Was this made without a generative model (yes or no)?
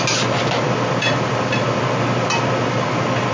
yes